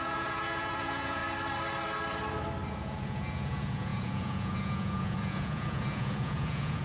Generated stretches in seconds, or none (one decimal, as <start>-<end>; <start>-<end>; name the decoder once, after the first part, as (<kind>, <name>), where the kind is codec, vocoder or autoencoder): 0.0-1.2 (vocoder, Vocos); 2.7-6.8